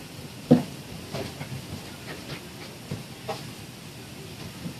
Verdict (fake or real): real